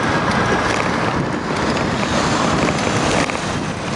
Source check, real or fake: real